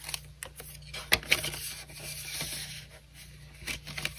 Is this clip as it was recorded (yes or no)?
yes